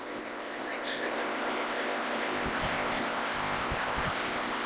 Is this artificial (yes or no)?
yes